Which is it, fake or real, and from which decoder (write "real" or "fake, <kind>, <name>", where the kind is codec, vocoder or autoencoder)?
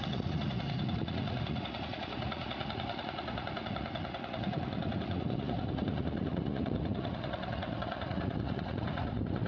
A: fake, vocoder, Vocos